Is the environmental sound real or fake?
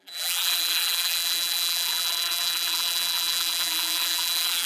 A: fake